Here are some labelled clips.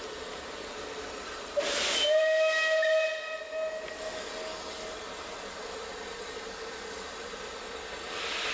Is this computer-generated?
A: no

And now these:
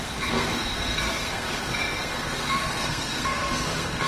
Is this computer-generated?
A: yes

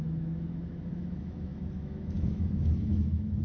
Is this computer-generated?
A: yes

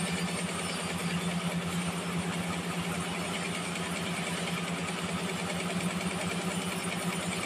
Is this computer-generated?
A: no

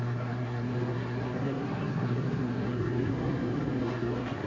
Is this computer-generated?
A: yes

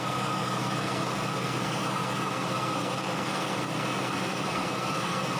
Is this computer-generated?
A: yes